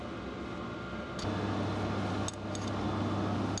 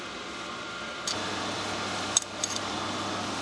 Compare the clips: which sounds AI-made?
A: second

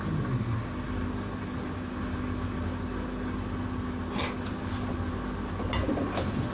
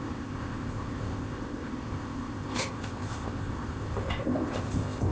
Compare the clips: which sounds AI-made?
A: second